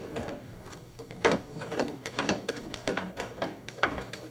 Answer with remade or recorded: remade